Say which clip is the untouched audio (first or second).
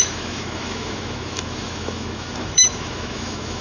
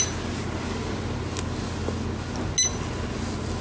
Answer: second